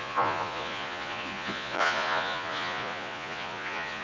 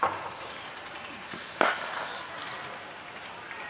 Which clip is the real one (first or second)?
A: second